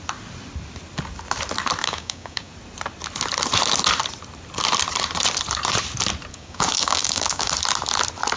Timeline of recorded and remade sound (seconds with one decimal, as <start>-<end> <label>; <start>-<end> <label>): 0.0-1.8 recorded; 1.8-2.5 remade; 2.5-6.3 recorded; 6.3-7.5 remade; 7.5-8.4 recorded